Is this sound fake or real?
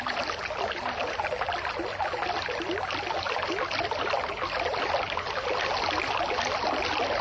real